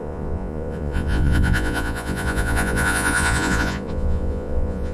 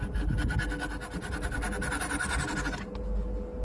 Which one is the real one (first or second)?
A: second